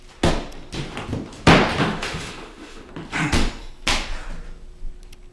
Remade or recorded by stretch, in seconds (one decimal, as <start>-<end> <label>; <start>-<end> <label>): 0.0-1.8 recorded; 1.8-2.9 remade; 2.9-5.3 recorded